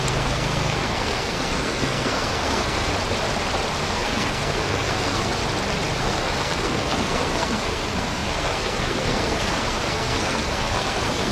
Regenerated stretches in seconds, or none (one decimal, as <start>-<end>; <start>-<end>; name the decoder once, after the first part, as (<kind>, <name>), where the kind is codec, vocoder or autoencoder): 0.0-2.9 (codec, SNAC); 3.8-5.4; 6.0-11.3